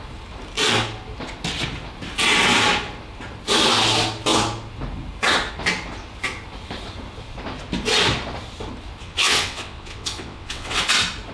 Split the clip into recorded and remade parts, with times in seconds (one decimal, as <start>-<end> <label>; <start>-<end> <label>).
0.0-9.0 recorded; 9.0-10.8 remade; 10.8-11.3 recorded